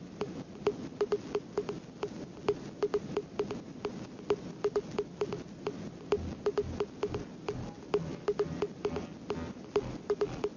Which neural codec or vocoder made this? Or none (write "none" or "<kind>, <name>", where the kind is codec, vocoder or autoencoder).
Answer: none